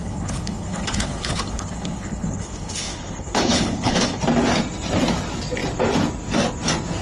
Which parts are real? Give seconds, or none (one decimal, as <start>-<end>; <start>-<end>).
4.2-7.0